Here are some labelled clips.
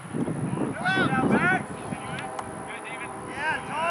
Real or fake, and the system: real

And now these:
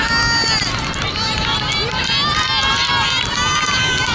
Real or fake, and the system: real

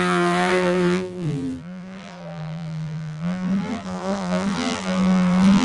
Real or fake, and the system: fake, vocoder, BigVGAN v2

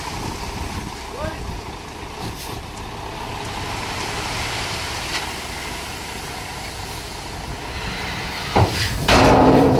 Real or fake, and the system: fake, vocoder, BigVGAN v2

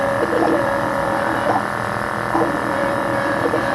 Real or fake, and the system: fake, vocoder, BigVGAN v2